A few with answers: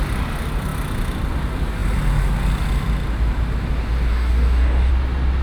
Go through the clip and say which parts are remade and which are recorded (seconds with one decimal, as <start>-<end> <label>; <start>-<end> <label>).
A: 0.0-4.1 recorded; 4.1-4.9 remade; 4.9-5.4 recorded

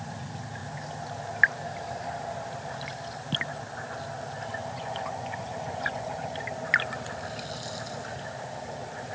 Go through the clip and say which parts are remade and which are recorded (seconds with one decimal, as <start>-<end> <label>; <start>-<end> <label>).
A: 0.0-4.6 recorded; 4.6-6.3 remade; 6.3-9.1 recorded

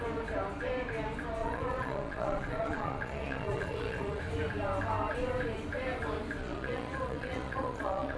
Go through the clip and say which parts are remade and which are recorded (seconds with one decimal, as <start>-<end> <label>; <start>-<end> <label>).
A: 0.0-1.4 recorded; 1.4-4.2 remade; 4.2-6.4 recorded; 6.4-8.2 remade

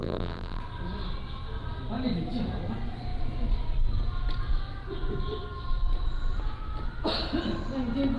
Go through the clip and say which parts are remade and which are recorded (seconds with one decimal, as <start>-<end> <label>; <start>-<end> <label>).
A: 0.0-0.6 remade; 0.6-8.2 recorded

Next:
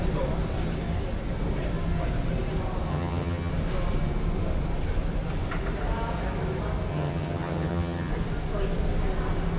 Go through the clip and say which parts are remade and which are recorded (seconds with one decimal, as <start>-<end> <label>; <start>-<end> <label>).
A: 0.0-2.9 recorded; 2.9-3.5 remade; 3.5-6.9 recorded; 6.9-8.1 remade; 8.1-9.6 recorded

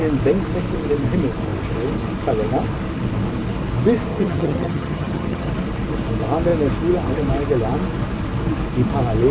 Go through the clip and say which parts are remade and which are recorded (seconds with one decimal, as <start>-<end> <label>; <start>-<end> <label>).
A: 0.0-4.1 recorded; 4.1-5.5 remade; 5.5-9.3 recorded

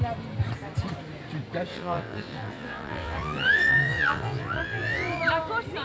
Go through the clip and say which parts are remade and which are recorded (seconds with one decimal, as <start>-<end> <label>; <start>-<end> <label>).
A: 0.0-1.7 recorded; 1.7-5.2 remade; 5.2-5.8 recorded

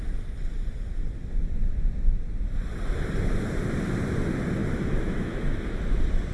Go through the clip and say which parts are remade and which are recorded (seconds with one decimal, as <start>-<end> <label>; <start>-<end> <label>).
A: 0.0-4.6 recorded; 4.6-5.8 remade; 5.8-6.3 recorded